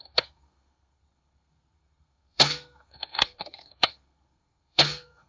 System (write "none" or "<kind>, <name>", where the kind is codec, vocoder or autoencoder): codec, SNAC